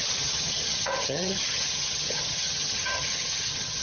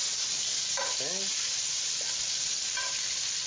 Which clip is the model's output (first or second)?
first